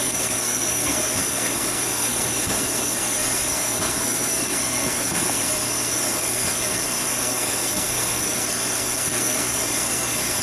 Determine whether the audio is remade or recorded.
remade